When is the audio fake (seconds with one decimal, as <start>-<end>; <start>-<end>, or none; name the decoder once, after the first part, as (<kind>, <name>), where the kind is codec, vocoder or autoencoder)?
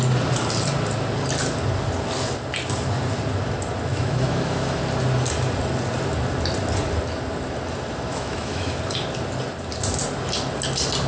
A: 3.9-4.8 (autoencoder, DAC-VAE); 8.1-8.8